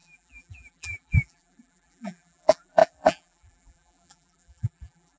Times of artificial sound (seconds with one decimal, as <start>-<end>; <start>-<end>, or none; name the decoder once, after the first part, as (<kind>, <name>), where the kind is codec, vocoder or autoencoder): 0.0-5.2 (vocoder, BigVGAN v2)